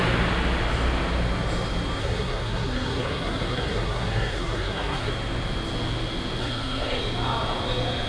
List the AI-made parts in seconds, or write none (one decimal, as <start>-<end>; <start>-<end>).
2.0-5.1; 6.4-7.0